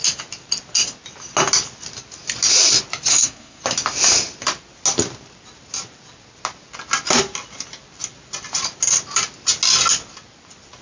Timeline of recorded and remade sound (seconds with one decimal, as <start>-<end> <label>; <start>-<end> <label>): 0.0-3.1 recorded; 3.1-3.6 remade; 3.6-10.8 recorded